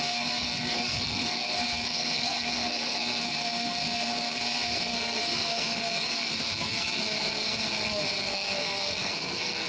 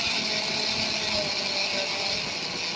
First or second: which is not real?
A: first